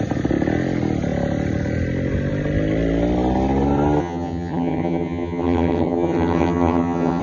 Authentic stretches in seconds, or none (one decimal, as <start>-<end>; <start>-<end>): 0.0-4.0